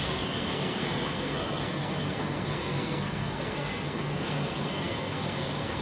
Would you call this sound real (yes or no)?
no